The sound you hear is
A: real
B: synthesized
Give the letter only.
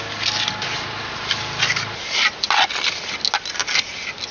A